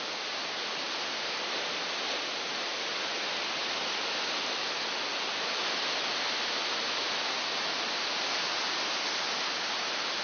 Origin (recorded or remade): recorded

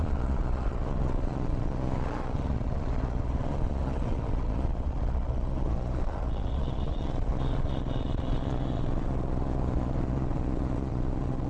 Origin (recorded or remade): remade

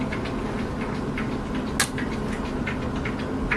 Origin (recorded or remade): recorded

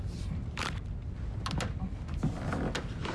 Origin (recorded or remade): recorded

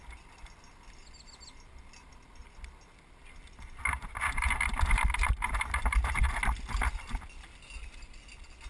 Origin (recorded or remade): recorded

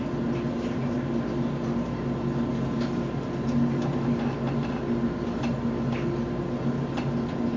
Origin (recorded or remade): recorded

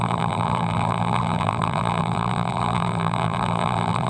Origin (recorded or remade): remade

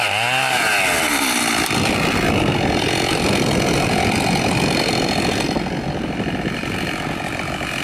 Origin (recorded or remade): recorded